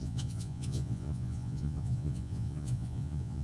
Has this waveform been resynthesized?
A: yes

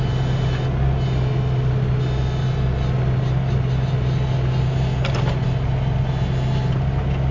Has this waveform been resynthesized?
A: no